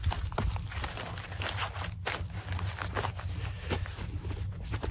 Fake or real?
real